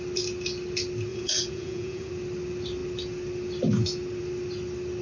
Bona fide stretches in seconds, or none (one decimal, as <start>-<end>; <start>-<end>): 0.0-1.1; 2.1-5.0